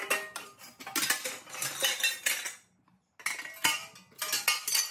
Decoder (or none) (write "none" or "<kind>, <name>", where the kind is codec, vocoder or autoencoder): none